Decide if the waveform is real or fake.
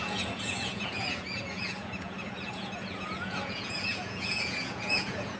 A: fake